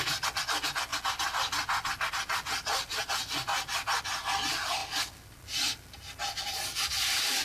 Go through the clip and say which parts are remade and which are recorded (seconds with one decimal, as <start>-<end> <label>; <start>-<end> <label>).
0.0-0.9 remade; 0.9-2.1 recorded; 2.1-3.5 remade; 3.5-4.0 recorded; 4.0-7.4 remade